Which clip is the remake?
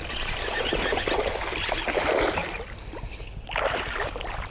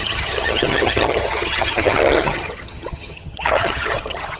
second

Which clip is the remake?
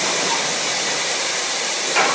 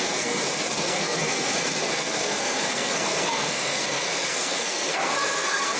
second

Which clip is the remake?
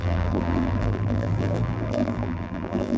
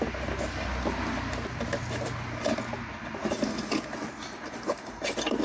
first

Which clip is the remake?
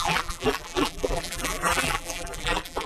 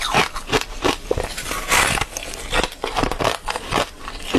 first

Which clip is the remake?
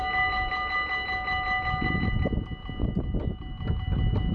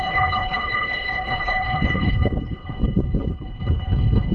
second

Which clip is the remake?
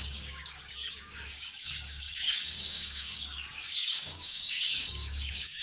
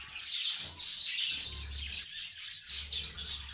first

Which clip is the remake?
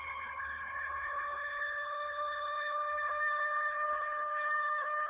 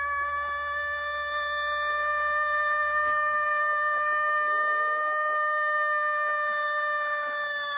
first